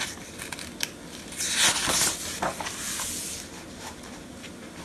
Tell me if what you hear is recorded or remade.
recorded